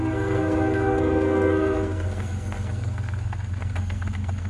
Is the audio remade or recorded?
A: remade